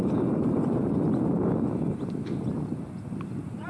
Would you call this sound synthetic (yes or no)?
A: no